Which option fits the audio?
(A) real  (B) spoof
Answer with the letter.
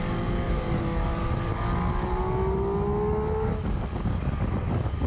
B